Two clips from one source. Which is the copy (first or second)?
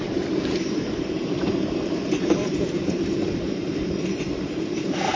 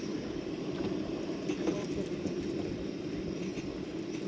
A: first